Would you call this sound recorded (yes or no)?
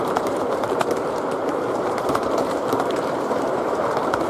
no